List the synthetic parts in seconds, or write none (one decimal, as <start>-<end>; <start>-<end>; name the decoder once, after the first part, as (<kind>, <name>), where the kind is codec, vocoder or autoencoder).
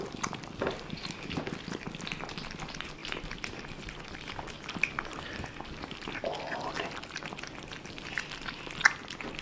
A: none